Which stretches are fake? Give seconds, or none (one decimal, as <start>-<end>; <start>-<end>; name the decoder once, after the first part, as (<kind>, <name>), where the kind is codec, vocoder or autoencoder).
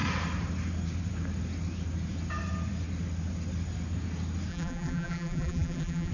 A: 4.5-6.1 (vocoder, BigVGAN v2)